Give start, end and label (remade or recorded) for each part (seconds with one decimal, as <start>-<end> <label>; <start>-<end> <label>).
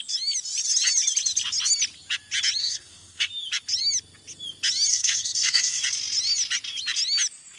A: 0.0-2.6 recorded; 2.6-3.3 remade; 3.3-4.9 recorded; 4.9-5.8 remade; 5.8-7.6 recorded